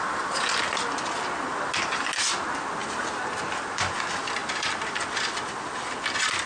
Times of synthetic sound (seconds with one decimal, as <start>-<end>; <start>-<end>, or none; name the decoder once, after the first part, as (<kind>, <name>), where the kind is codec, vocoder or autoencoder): none